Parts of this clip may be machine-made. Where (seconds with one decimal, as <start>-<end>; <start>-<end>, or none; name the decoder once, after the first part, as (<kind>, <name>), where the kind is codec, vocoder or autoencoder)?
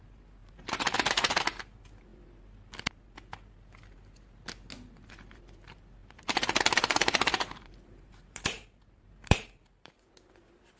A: 0.4-1.4 (vocoder, BigVGAN v2); 6.0-10.1